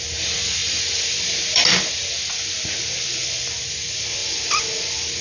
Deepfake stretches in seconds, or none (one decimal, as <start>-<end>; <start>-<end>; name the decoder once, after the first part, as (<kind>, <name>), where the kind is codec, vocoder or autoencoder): 0.6-1.7 (vocoder, BigVGAN v2); 4.2-5.2